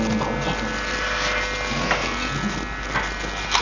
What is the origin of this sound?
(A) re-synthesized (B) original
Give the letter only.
B